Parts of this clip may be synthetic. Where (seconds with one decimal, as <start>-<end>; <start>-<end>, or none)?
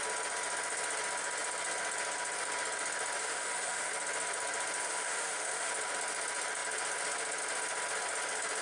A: 3.2-3.9; 4.8-5.7